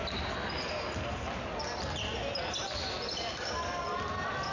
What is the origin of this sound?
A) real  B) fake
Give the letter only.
A